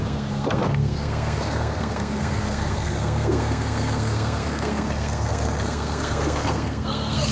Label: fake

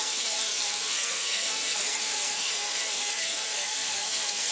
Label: fake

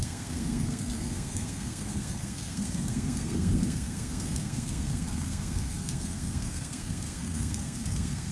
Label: fake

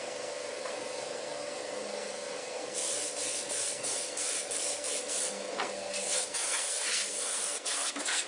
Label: fake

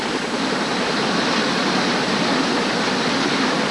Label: real